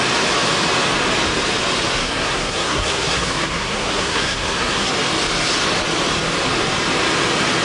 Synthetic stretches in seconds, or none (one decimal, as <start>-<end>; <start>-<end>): 2.0-4.9